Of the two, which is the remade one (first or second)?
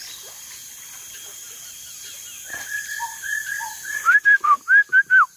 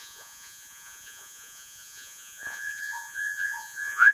second